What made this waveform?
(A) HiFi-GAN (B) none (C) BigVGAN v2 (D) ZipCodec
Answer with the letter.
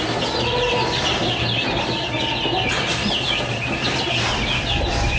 B